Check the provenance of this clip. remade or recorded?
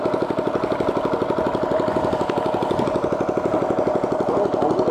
recorded